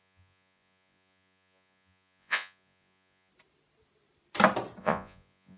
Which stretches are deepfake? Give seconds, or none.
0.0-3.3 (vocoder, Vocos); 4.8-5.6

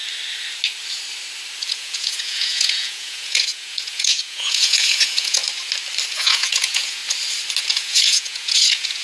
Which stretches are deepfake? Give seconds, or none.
1.7-5.4 (vocoder, Vocos); 6.1-7.0; 7.6-9.0

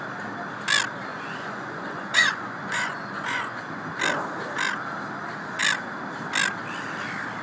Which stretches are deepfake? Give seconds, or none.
1.1-3.6 (vocoder, Vocos)

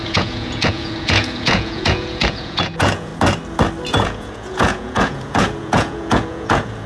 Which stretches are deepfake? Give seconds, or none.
0.0-3.1 (vocoder, Vocos); 3.9-6.9

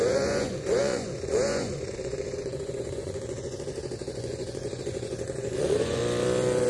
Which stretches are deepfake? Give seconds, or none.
0.0-6.0 (vocoder, Vocos)

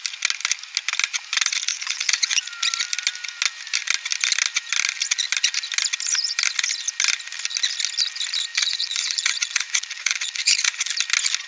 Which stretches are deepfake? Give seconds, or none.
1.7-2.5 (vocoder, Vocos); 8.5-10.9

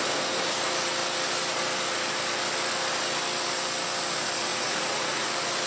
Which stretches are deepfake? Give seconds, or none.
4.5-5.3 (vocoder, Vocos)

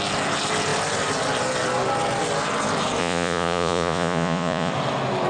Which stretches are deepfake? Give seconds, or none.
3.0-4.7 (vocoder, Vocos)